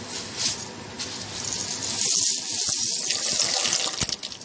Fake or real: real